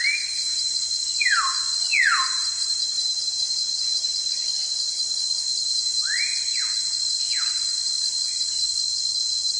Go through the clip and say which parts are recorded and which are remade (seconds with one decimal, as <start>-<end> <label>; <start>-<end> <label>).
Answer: 0.0-2.4 recorded; 2.4-3.7 remade; 3.7-9.6 recorded